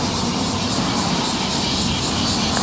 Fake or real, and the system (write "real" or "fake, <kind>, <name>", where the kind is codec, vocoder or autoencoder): real